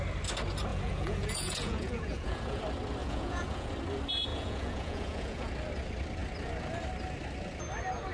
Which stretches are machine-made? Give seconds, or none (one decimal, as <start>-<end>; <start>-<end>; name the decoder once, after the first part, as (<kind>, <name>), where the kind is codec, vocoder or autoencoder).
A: 0.7-2.6 (vocoder, Vocos); 3.0-3.7; 4.3-5.5